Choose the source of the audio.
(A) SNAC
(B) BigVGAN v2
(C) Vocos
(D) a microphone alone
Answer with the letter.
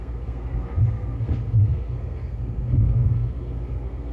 A